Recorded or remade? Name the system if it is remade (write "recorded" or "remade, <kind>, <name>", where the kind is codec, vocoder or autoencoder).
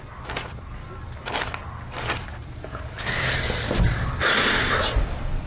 recorded